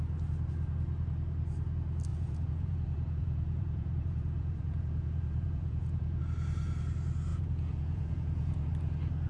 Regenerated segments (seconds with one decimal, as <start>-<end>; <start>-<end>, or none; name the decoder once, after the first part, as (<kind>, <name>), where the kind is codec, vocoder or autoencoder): 2.1-6.2 (vocoder, Vocos); 7.3-8.7